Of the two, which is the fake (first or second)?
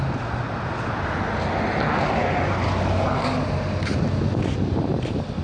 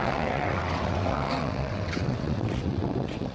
second